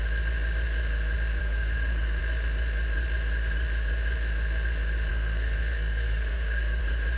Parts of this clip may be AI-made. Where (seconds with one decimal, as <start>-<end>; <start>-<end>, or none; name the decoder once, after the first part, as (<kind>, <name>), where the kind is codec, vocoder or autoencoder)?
1.4-2.2 (codec, SNAC); 5.1-6.8